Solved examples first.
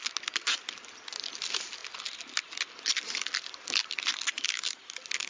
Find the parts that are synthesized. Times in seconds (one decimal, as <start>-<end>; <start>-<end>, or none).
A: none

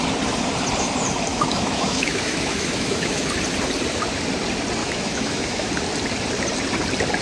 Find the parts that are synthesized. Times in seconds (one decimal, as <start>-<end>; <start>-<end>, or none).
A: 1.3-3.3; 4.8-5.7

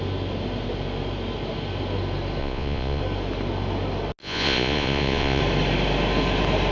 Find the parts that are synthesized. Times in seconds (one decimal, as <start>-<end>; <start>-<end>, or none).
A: 2.4-3.0; 4.2-5.4

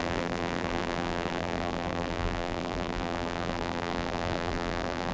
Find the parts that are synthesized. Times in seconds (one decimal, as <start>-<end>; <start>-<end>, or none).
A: 0.0-5.1

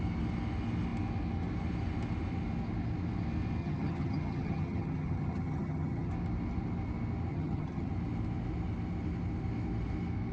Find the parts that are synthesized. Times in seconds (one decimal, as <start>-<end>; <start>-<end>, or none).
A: 3.6-6.1; 7.3-7.9

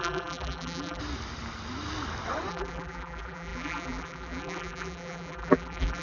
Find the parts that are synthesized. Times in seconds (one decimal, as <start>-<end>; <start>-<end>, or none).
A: 0.0-1.0; 2.5-6.0